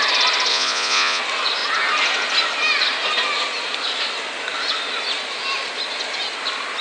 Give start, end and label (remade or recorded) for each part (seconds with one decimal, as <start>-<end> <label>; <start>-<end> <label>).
0.0-0.5 recorded; 0.5-1.2 remade; 1.2-6.8 recorded